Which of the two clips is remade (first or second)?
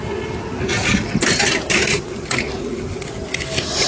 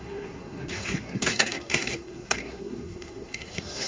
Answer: second